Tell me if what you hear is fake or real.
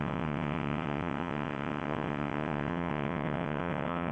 fake